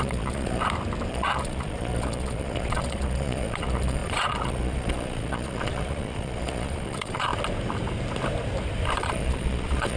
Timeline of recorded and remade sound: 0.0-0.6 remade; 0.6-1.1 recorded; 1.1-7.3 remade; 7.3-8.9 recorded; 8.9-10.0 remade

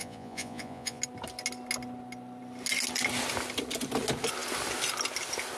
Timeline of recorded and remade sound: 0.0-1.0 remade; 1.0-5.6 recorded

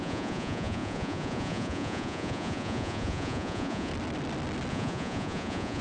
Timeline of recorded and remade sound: 0.0-3.9 remade; 3.9-4.7 recorded; 4.7-5.8 remade